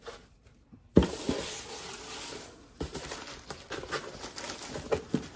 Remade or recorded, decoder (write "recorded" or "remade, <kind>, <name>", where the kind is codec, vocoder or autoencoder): recorded